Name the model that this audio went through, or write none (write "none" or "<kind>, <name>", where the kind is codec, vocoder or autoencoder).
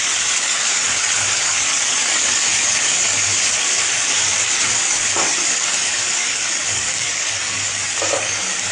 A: codec, DAC